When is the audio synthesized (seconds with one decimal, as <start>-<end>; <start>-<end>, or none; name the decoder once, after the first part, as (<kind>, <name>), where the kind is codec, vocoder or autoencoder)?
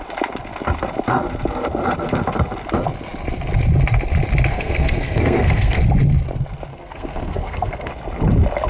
4.5-5.8 (codec, SNAC); 6.7-7.9